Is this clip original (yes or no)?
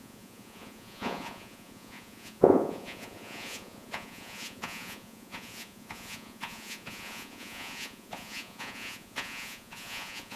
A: no